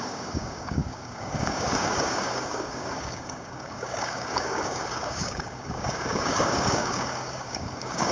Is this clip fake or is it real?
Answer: fake